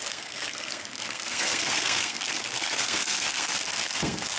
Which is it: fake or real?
fake